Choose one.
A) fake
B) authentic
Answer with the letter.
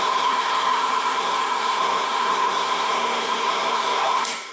A